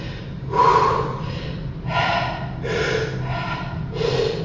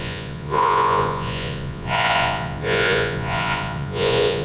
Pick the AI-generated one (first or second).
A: second